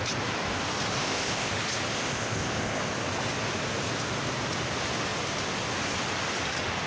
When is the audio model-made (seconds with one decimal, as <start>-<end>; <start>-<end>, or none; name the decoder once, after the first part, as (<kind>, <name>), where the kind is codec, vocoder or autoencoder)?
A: 1.0-1.5 (codec, ZipCodec); 1.9-2.8